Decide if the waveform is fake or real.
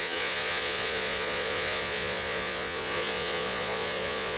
fake